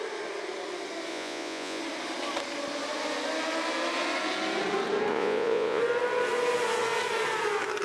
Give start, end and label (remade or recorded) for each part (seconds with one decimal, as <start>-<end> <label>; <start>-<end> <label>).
0.0-1.1 recorded; 1.1-1.8 remade; 1.8-5.1 recorded; 5.1-5.8 remade; 5.8-7.8 recorded